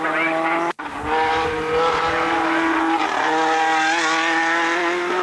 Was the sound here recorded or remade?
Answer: recorded